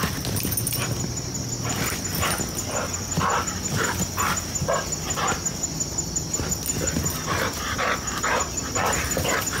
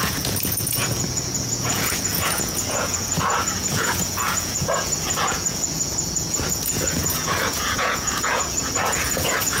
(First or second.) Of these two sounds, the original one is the first